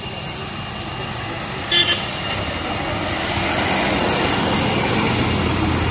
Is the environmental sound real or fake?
real